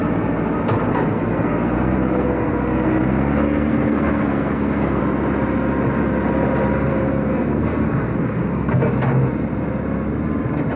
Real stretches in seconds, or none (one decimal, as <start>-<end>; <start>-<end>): 0.0-0.9; 5.0-6.9; 8.9-10.8